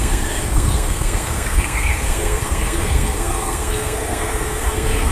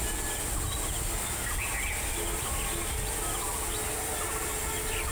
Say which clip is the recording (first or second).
second